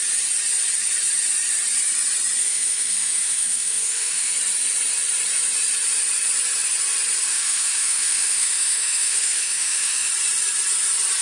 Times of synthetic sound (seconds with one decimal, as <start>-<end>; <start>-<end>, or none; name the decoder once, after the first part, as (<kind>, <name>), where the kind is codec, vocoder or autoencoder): 2.4-4.3 (autoencoder, DAC-VAE); 7.3-10.1